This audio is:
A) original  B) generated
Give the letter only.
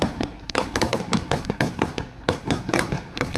B